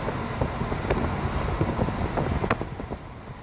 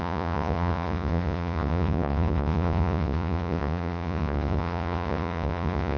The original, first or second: first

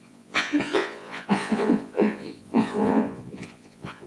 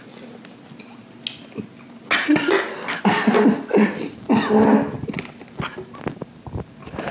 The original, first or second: second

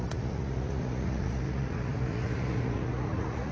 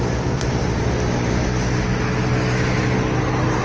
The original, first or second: second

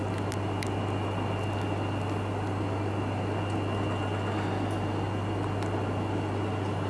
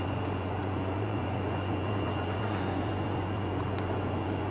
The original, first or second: first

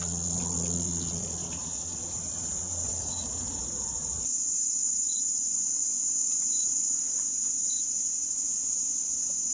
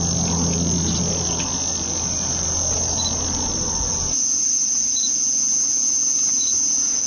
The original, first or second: second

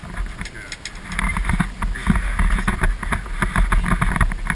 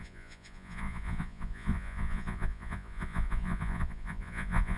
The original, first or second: first